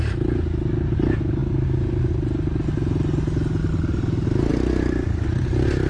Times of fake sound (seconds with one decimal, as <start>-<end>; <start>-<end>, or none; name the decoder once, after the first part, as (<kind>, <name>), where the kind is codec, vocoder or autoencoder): none

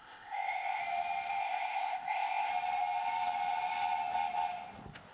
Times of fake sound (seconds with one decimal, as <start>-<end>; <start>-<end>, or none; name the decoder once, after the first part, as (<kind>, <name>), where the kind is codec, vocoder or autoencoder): 0.0-0.8 (codec, ZipCodec); 1.4-2.5